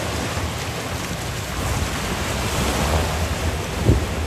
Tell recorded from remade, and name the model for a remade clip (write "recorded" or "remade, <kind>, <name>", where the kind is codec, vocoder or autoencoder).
recorded